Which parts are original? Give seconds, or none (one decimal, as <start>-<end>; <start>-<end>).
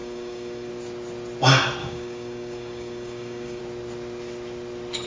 0.7-1.8; 3.6-5.1